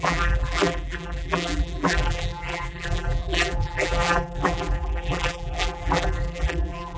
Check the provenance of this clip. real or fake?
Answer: fake